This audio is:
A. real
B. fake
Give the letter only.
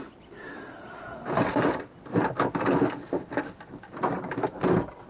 A